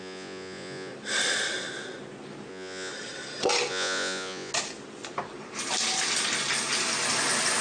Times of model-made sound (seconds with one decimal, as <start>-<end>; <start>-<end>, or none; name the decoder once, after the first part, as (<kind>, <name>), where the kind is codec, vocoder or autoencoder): 0.0-0.9 (vocoder, Vocos); 2.5-2.9; 3.7-4.5